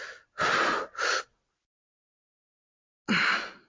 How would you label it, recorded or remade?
recorded